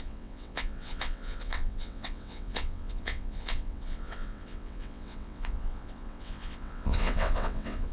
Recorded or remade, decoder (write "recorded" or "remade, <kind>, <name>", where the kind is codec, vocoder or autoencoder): remade, vocoder, WaveNeXt